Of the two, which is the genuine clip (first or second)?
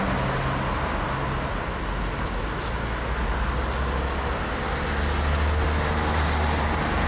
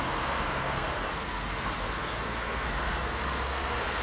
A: first